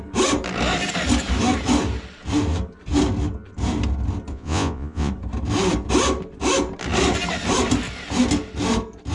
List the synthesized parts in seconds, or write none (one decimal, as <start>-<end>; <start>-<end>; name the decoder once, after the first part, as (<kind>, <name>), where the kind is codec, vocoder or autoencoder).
4.3-5.1 (vocoder, Vocos)